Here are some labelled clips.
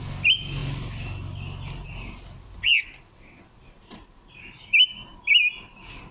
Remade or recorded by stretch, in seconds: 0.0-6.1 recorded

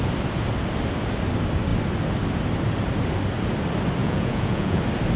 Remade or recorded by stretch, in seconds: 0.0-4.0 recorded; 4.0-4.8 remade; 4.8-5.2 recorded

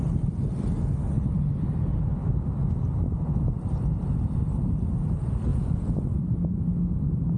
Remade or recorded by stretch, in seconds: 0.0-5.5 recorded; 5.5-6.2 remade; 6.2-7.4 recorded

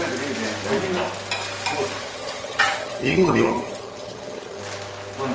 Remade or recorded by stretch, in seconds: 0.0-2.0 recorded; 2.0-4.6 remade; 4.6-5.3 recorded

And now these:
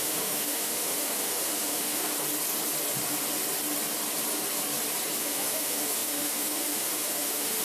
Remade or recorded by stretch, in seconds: 0.0-2.1 remade; 2.1-5.2 recorded; 5.2-7.6 remade

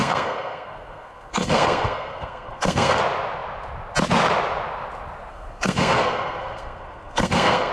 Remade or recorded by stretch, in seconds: 0.0-3.0 remade; 3.0-5.3 recorded; 5.3-7.7 remade